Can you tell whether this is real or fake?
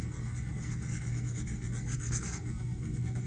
fake